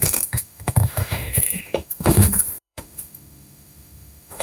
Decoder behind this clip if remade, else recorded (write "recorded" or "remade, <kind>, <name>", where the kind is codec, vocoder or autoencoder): remade, autoencoder, DAC-VAE